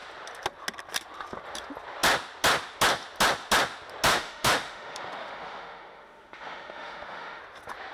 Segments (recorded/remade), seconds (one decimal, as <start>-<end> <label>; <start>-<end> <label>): 0.0-4.1 recorded; 4.1-7.4 remade; 7.4-7.9 recorded